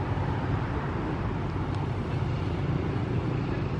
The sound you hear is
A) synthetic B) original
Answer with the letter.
B